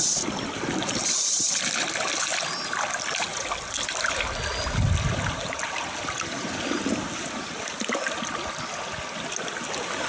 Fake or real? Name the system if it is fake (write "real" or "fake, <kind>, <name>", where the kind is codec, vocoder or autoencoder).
real